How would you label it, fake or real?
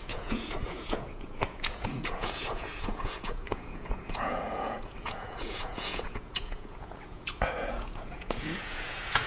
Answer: fake